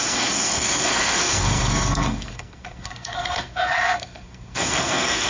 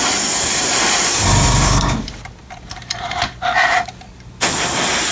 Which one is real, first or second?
second